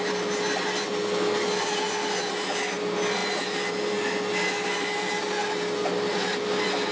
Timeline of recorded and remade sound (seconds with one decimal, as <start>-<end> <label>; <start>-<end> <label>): 0.0-6.9 recorded